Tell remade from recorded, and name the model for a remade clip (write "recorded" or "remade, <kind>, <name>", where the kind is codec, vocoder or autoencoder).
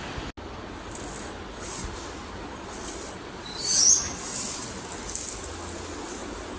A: recorded